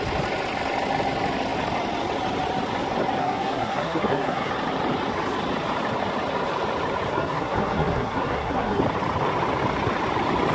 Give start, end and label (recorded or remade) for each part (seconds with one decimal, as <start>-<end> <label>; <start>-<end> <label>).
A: 0.0-3.2 recorded; 3.2-4.5 remade; 4.5-7.1 recorded; 7.1-8.8 remade; 8.8-10.5 recorded